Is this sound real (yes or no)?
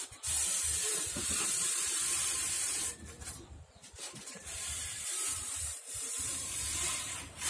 no